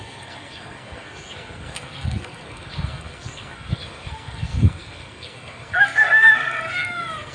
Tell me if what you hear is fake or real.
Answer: fake